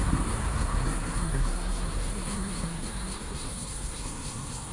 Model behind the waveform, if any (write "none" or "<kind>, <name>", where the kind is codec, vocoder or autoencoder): codec, SNAC